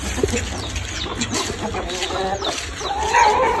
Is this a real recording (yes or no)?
yes